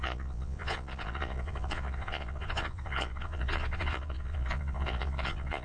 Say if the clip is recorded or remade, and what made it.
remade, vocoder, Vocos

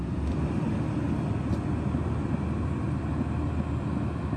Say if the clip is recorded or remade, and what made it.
recorded